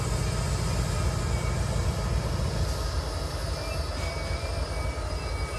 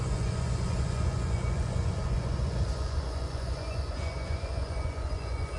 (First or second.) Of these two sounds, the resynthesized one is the second